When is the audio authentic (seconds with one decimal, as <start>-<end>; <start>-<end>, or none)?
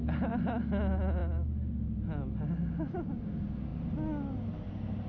0.0-5.1